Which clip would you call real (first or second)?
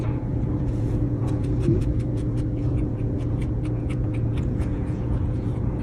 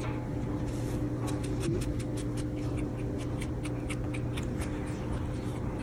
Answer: second